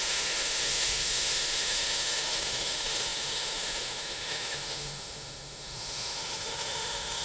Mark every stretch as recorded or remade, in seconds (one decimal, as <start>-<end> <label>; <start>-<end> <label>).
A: 0.0-7.2 remade